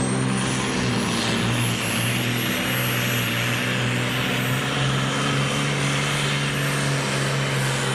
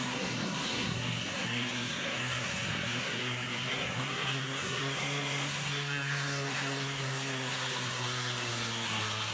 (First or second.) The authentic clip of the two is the first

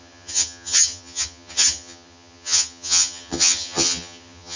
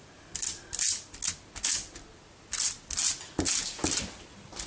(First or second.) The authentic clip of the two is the second